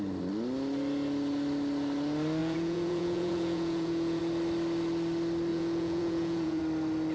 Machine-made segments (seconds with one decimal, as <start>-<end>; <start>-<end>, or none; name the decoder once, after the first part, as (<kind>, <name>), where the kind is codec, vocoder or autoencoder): 2.4-4.2 (vocoder, Vocos); 5.5-6.6